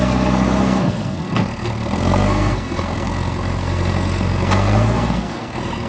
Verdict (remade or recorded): remade